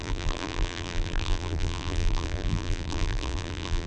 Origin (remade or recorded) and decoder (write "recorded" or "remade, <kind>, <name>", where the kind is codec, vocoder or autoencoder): remade, vocoder, BigVGAN v2